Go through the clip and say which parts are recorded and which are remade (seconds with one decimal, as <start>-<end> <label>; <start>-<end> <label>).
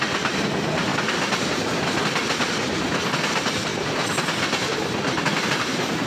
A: 0.0-0.9 remade; 0.9-3.3 recorded; 3.3-3.7 remade; 3.7-5.6 recorded; 5.6-6.1 remade